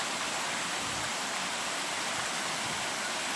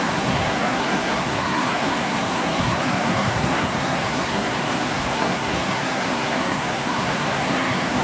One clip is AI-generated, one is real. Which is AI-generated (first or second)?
second